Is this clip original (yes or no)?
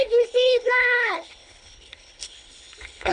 no